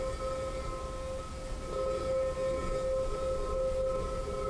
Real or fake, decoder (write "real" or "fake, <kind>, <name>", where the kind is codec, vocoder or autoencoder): real